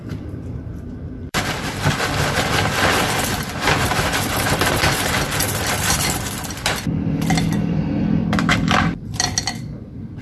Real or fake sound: fake